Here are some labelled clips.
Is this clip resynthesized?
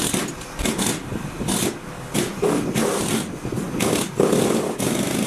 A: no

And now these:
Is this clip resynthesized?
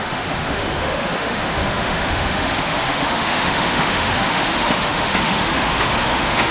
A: yes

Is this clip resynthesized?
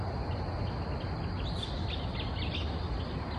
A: no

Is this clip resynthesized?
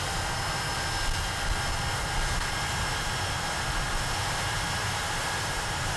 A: no